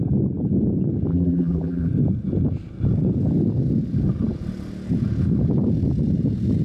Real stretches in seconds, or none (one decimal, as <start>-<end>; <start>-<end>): 0.0-1.1; 1.9-6.6